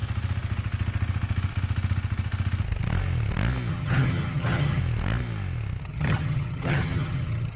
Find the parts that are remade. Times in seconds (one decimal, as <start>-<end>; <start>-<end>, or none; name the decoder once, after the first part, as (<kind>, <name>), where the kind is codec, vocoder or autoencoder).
3.7-4.8 (vocoder, HiFi-GAN); 5.8-7.6